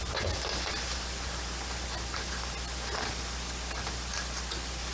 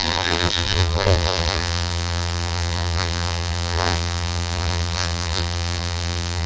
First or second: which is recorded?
first